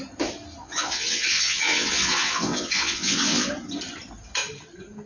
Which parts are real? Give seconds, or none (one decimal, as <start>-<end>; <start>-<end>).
0.0-0.6; 3.5-5.1